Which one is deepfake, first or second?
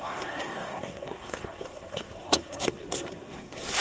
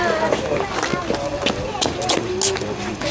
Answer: first